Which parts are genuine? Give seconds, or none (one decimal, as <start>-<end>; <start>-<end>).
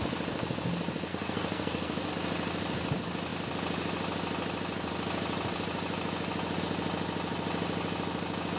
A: 0.0-1.1; 2.1-8.6